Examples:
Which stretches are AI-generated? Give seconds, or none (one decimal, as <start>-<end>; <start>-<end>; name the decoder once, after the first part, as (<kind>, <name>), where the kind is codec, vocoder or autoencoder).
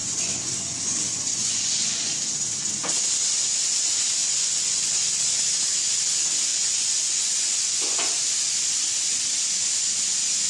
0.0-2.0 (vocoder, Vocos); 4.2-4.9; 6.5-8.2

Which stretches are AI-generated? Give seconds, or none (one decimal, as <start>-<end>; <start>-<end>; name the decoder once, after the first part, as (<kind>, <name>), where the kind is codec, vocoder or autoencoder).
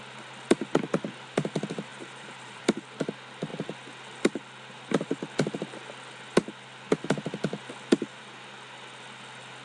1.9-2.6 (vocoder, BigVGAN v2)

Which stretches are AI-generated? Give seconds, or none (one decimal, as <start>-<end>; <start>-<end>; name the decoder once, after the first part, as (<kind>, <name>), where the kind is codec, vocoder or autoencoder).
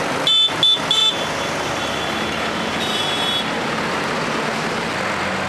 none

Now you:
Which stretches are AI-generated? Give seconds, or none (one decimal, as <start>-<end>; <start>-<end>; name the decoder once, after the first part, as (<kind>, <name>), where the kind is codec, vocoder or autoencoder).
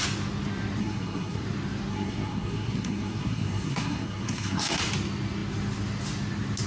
0.8-1.4 (codec, SNAC); 1.9-4.8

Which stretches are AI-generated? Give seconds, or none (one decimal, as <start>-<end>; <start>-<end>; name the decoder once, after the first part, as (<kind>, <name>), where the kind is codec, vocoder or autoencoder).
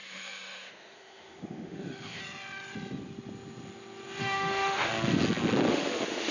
0.0-2.2 (autoencoder, DAC-VAE); 4.2-4.9; 5.7-6.3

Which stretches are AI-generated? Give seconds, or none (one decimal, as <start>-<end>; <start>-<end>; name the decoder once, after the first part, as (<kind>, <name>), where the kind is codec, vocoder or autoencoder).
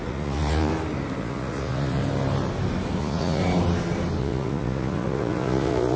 0.0-0.7 (vocoder, Vocos); 1.2-2.0; 3.0-3.4; 4.2-6.0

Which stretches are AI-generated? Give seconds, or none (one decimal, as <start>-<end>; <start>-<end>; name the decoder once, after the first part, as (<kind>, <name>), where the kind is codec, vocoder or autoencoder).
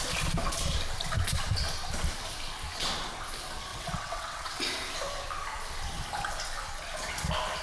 3.7-4.6 (vocoder, WaveNeXt)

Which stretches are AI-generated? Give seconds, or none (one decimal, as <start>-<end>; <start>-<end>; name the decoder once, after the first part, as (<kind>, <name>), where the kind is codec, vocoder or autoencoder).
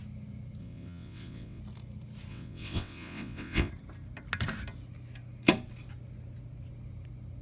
0.6-1.6 (vocoder, WaveNeXt); 2.3-3.7